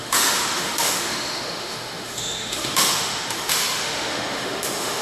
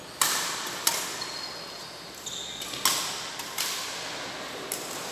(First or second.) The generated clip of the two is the first